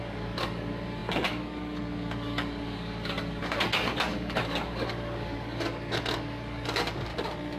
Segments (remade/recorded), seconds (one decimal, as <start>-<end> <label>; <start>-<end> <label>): 0.0-7.1 remade; 7.1-7.6 recorded